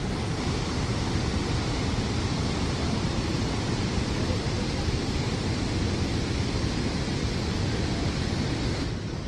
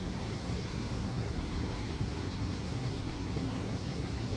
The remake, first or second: second